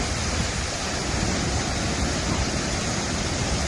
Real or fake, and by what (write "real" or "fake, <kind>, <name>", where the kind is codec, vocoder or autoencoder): real